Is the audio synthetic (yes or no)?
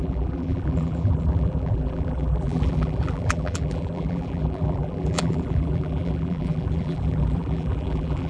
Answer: yes